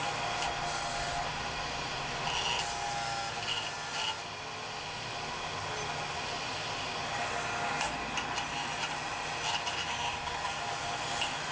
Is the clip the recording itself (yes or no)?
yes